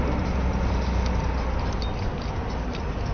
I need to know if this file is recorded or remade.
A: recorded